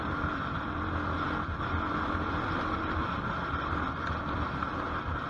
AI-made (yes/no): no